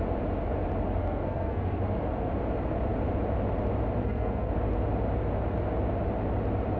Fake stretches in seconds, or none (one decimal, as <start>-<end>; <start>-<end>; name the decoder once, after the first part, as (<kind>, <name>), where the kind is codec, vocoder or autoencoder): 1.0-2.3 (codec, SNAC); 4.0-4.5